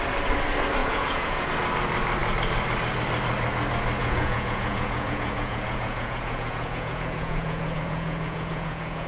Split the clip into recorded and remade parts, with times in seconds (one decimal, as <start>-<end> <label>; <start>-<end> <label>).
0.0-0.8 recorded; 0.8-1.5 remade; 1.5-4.0 recorded; 4.0-9.1 remade